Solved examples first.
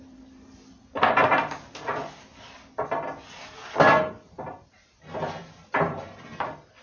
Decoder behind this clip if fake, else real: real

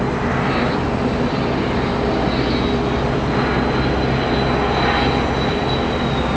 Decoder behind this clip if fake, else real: real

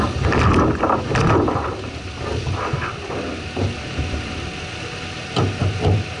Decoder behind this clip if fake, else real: real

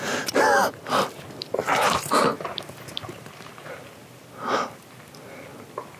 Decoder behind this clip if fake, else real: real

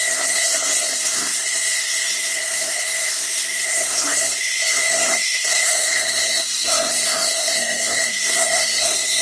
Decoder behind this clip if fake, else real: fake, codec, SNAC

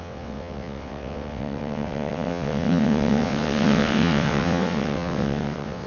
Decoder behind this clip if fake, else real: fake, vocoder, WaveNeXt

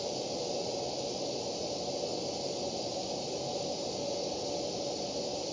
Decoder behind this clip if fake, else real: real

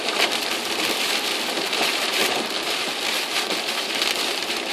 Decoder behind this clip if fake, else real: fake, vocoder, BigVGAN v2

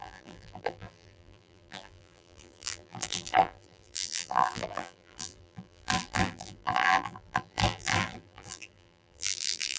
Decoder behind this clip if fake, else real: fake, vocoder, BigVGAN v2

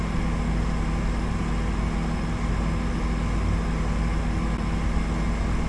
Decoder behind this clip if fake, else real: real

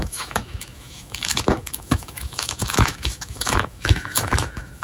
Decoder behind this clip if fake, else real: fake, autoencoder, DAC-VAE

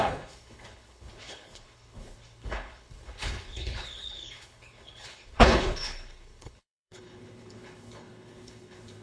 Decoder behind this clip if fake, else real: fake, codec, HILCodec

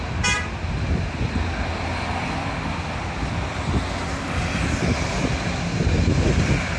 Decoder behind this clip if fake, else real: real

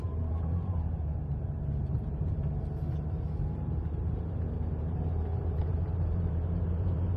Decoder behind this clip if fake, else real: fake, vocoder, BigVGAN v2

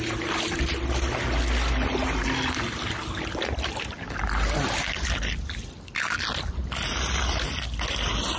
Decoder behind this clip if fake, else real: real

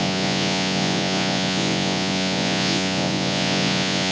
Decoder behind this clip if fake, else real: fake, vocoder, Vocos